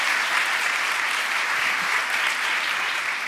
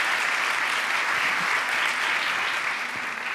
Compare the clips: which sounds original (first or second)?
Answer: second